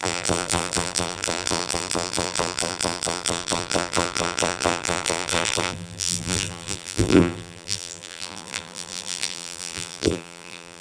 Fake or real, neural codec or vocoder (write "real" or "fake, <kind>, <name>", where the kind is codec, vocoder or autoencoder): fake, vocoder, BigVGAN v2